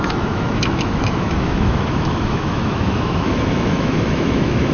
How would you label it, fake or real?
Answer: fake